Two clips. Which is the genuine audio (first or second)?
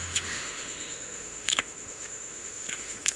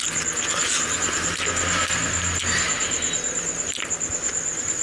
second